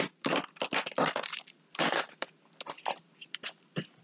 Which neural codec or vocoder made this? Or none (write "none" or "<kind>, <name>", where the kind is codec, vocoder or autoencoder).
none